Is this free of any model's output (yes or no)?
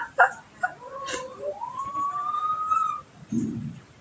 yes